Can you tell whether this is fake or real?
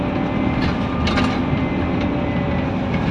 real